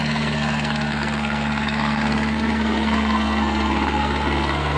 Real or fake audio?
fake